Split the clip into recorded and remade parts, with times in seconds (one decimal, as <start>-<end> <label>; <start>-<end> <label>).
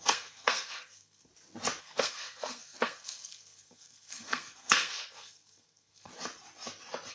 0.0-1.3 remade; 1.3-1.8 recorded; 1.8-6.1 remade; 6.1-7.1 recorded